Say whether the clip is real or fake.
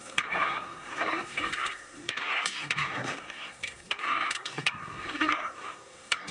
fake